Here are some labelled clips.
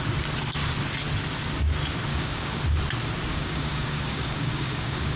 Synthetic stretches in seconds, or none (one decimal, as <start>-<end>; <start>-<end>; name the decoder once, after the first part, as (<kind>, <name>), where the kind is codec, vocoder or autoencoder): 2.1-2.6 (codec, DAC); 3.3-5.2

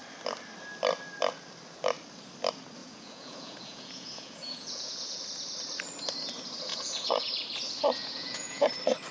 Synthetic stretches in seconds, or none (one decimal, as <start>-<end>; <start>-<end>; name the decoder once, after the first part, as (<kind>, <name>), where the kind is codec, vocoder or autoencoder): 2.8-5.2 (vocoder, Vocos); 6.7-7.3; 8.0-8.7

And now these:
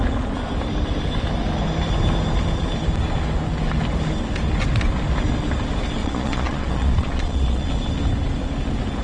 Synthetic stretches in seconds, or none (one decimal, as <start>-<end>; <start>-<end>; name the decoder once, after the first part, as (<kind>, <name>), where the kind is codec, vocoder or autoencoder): 6.0-7.7 (vocoder, Vocos)

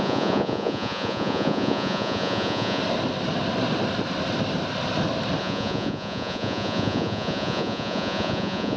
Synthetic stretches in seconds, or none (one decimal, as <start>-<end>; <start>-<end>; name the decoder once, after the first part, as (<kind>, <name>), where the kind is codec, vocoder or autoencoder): 0.0-2.8 (vocoder, Vocos); 5.4-8.8

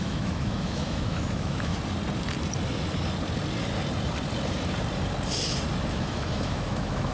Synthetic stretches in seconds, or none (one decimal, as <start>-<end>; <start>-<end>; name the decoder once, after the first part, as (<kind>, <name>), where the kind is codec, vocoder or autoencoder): 0.0-1.7 (autoencoder, DAC-VAE); 5.9-7.1

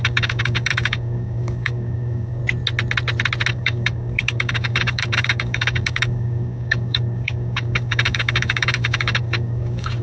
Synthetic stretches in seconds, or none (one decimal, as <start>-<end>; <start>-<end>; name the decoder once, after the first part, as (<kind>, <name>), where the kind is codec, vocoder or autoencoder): 0.0-2.4 (codec, DAC); 3.5-10.0

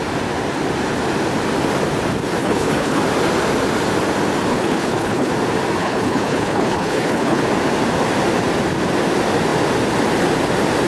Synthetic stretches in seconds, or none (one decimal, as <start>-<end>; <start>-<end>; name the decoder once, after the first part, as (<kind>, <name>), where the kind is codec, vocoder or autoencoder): 2.4-3.0 (codec, HILCodec); 4.5-5.3; 5.8-7.4

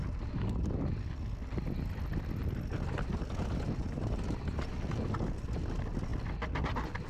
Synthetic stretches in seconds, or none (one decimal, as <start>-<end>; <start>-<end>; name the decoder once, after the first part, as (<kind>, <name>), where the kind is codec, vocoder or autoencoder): 2.4-3.0 (vocoder, BigVGAN v2); 6.1-7.1